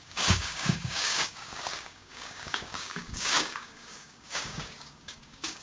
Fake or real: fake